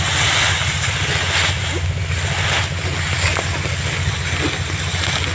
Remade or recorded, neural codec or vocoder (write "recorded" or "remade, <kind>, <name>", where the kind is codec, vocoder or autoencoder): recorded